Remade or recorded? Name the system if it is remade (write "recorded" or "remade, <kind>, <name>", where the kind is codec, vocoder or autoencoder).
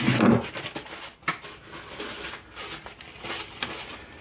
recorded